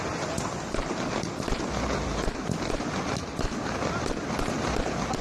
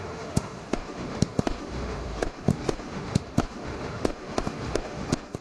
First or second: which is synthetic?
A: second